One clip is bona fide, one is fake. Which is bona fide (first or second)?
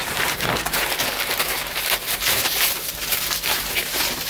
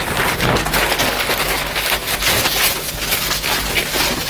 second